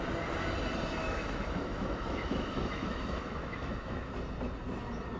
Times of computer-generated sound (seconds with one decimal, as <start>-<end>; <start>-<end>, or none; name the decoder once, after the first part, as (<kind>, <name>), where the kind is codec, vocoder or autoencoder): 1.0-4.1 (autoencoder, DAC-VAE)